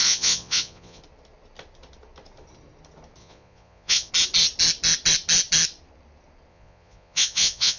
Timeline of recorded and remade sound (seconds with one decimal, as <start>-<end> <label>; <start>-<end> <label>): 0.0-1.0 remade; 1.0-3.2 recorded; 3.2-4.1 remade; 4.1-6.5 recorded; 6.5-7.8 remade